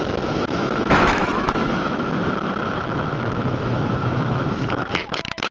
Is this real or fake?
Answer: fake